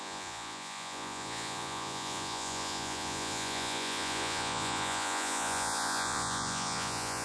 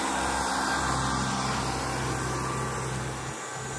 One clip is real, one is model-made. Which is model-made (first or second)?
first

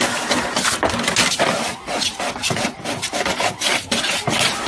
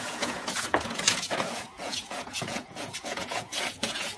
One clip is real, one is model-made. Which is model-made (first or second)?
second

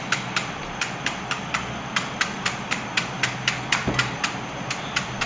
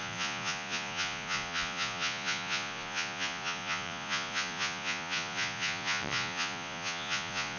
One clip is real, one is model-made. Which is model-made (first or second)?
second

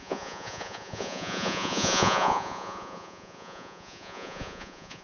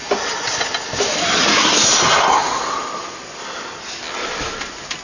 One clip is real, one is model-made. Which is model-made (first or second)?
first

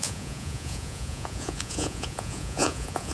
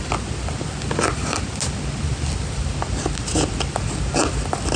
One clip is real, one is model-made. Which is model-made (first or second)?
first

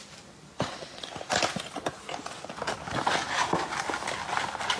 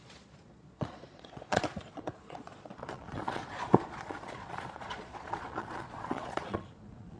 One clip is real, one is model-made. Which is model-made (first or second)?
second